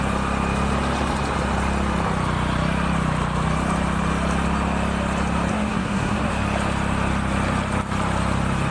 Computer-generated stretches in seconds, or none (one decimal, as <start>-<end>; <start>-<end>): 5.5-6.3